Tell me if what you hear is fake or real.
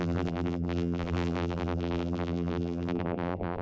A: fake